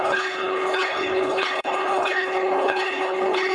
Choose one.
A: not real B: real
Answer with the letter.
A